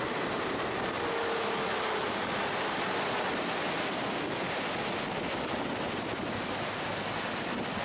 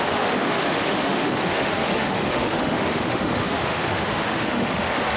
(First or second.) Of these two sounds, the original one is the first